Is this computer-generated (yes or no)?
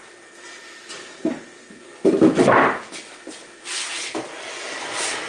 no